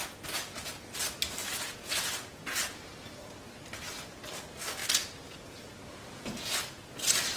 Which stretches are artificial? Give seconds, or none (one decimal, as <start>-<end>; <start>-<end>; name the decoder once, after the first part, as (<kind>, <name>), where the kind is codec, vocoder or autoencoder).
1.4-3.5 (vocoder, Vocos); 4.8-6.5